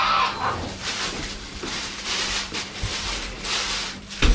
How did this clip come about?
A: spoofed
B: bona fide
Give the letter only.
A